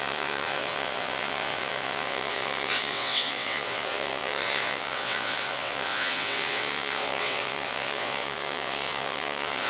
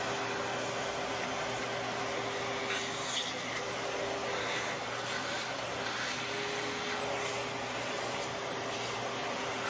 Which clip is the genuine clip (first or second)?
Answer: second